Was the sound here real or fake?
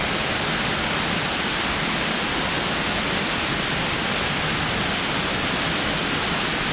real